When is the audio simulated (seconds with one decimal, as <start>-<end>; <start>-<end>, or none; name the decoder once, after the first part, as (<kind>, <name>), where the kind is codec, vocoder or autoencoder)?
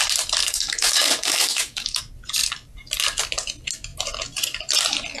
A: 0.4-2.0 (codec, DAC)